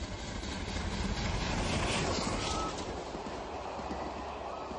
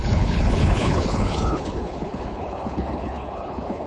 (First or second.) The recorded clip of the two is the first